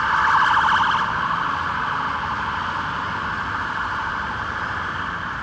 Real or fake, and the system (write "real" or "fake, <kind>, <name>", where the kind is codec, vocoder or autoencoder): real